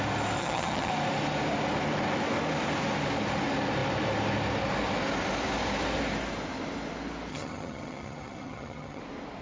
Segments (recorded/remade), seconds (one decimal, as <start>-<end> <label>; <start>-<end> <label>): 0.0-0.4 recorded; 0.4-0.9 remade; 0.9-7.3 recorded; 7.3-9.0 remade; 9.0-9.4 recorded